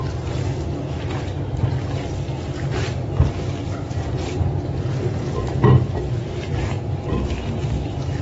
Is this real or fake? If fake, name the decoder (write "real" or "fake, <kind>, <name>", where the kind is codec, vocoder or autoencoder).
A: real